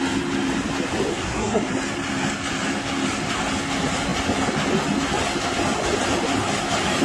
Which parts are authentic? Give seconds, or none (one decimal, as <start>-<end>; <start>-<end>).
0.0-1.1; 1.7-7.0